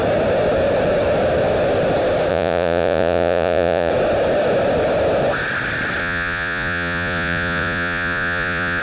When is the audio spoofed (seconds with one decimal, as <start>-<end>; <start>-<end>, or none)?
2.3-3.9; 6.0-8.8

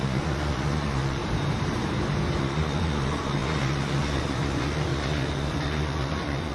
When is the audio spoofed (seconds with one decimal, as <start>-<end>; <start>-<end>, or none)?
0.0-1.2; 2.4-6.5

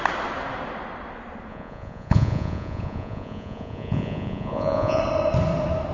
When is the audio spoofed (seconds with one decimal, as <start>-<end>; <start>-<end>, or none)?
1.5-5.0

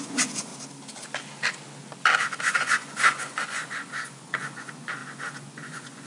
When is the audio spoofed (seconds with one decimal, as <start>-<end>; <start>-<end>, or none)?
0.0-0.5; 2.4-6.1

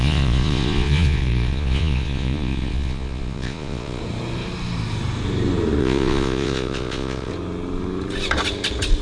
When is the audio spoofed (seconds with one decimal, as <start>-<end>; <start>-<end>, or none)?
0.0-4.0; 5.8-7.3